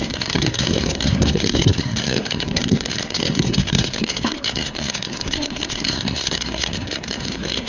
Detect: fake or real fake